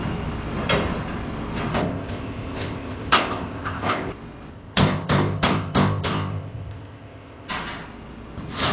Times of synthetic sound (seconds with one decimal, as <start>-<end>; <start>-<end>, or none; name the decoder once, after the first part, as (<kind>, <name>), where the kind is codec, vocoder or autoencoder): 1.7-4.1 (codec, ZipCodec); 4.5-7.5